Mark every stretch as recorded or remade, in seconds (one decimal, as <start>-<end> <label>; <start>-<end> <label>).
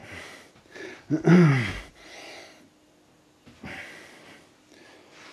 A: 0.0-5.3 recorded